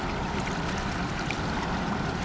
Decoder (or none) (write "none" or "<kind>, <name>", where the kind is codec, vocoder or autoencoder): none